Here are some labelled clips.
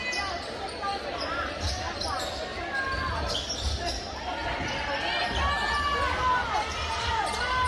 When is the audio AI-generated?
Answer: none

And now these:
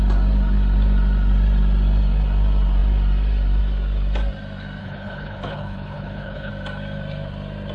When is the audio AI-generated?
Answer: 4.8-6.5

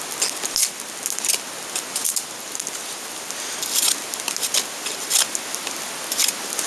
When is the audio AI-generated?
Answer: none

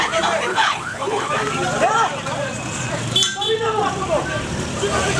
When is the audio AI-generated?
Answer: 0.5-1.3

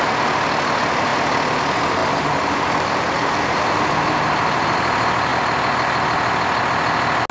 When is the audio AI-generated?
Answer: none